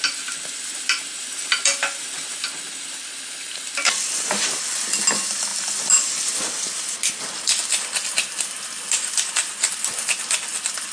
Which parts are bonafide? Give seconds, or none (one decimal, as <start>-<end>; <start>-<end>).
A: 0.0-10.9